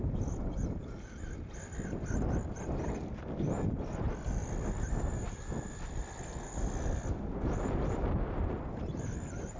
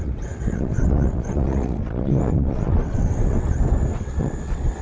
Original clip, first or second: first